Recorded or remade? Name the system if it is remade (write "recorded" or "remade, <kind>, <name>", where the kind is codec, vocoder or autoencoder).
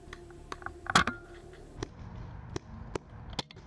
recorded